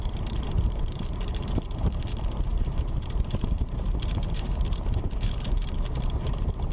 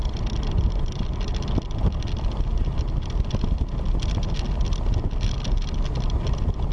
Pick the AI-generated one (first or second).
first